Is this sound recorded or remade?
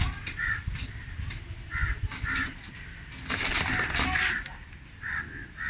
recorded